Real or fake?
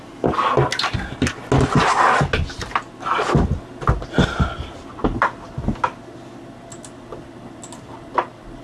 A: real